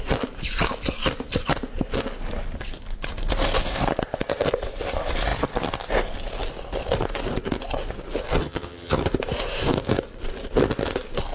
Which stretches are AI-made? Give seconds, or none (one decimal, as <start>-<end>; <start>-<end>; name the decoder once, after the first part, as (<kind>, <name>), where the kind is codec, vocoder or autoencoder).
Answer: 8.4-9.0 (vocoder, HiFi-GAN)